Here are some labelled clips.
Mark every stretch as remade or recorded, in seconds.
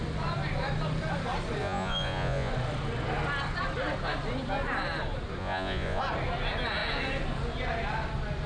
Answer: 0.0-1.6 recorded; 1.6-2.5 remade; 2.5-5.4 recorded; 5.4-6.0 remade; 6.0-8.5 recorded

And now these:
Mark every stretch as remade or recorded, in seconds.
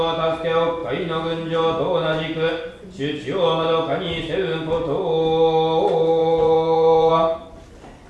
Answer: 0.0-6.2 recorded; 6.2-7.1 remade; 7.1-8.1 recorded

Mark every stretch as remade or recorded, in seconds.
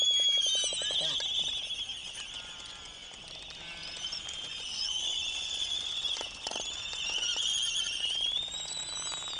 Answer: 0.0-2.0 recorded; 2.0-3.3 remade; 3.3-3.8 recorded; 3.8-8.9 remade; 8.9-9.4 recorded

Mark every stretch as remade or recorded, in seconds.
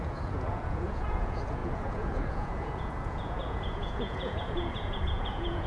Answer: 0.0-5.7 remade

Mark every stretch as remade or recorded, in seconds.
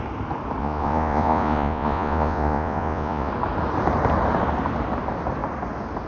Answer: 0.0-0.6 recorded; 0.6-3.3 remade; 3.3-6.1 recorded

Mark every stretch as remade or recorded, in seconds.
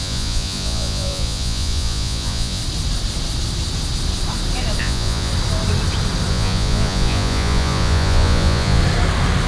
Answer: 0.0-2.6 remade; 2.6-4.8 recorded; 4.8-5.3 remade; 5.3-6.3 recorded; 6.3-8.8 remade; 8.8-9.5 recorded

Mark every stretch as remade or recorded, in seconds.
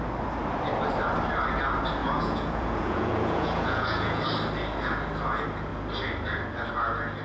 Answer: 0.0-2.0 recorded; 2.0-4.2 remade; 4.2-7.2 recorded